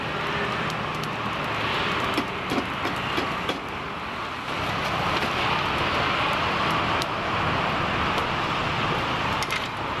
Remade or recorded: recorded